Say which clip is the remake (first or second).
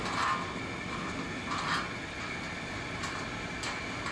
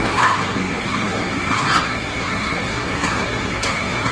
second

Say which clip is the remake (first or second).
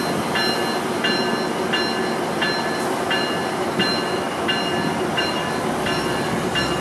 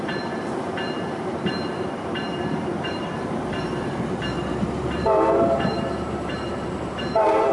second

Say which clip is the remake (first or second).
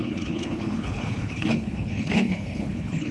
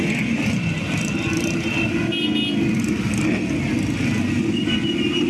first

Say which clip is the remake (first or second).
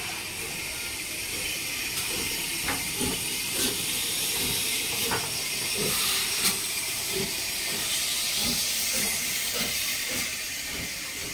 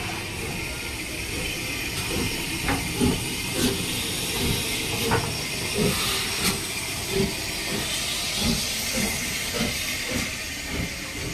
first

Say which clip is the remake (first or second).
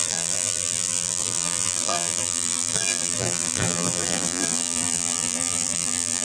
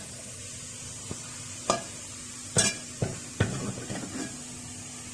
first